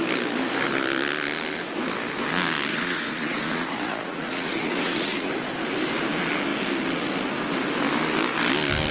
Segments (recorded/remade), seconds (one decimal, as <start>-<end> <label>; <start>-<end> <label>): 0.0-2.7 recorded; 2.7-5.3 remade; 5.3-8.9 recorded